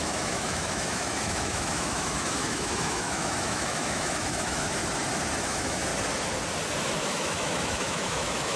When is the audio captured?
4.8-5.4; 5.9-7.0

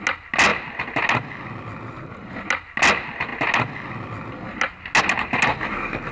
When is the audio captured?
0.0-6.1

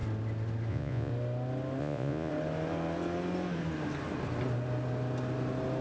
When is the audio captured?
0.0-0.7; 1.1-1.8; 2.3-5.8

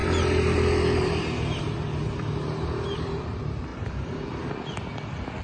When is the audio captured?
0.0-3.7; 4.5-5.4